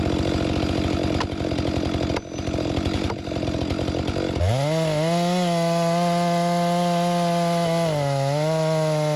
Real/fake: real